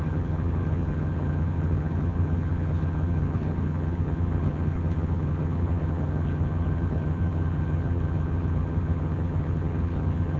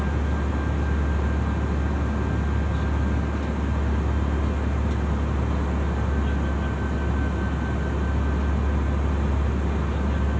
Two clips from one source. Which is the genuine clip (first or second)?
second